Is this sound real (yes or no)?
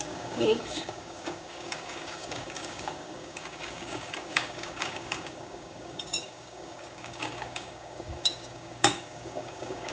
no